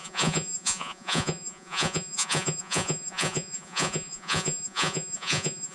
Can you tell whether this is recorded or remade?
remade